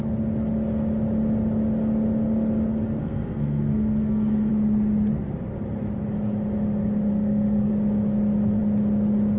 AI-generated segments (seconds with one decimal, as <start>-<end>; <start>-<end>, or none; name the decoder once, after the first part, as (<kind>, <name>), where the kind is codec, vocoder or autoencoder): 3.0-4.5 (codec, SNAC); 7.1-7.7